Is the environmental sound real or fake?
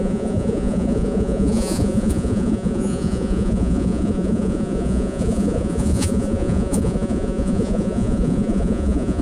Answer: fake